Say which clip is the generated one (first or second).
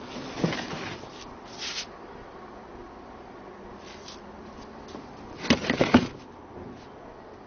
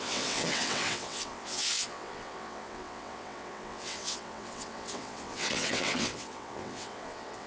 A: second